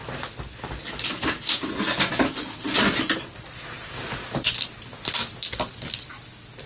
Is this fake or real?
real